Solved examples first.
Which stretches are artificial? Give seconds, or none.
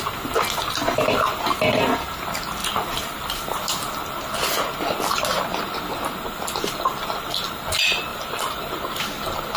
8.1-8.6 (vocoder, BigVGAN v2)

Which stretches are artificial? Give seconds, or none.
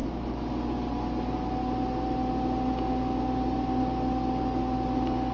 none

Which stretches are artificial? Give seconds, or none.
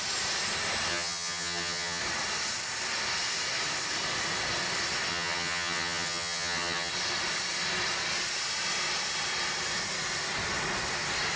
0.9-2.0 (vocoder, HiFi-GAN); 5.1-6.9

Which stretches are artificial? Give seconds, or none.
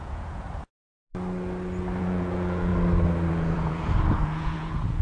0.0-1.0 (vocoder, Vocos); 2.0-2.7; 3.3-5.0